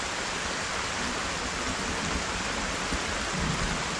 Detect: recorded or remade recorded